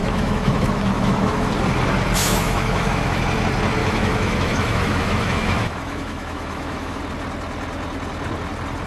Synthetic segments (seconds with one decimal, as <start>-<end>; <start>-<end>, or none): 0.0-1.5; 2.2-3.2; 3.8-7.0